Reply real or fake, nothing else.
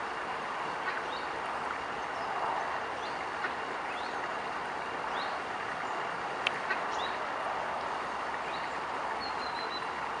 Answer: real